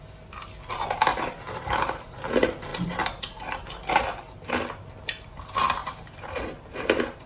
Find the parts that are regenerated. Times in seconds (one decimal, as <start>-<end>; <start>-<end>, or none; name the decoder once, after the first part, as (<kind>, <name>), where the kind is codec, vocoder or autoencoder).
1.1-2.2 (vocoder, BigVGAN v2); 5.8-7.3